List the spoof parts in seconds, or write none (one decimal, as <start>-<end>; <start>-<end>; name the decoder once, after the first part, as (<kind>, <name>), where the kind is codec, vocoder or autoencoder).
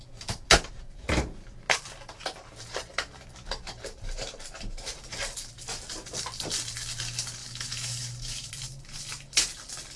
7.4-8.5 (autoencoder, DAC-VAE)